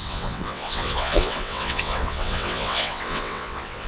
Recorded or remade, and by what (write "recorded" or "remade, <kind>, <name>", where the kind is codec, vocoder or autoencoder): remade, vocoder, WaveNeXt